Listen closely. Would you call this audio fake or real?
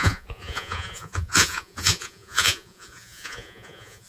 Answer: fake